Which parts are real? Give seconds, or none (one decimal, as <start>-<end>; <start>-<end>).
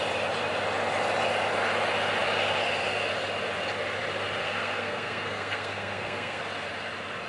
0.0-4.4; 6.4-7.3